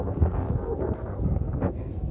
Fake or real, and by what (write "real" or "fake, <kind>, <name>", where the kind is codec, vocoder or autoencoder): fake, codec, SNAC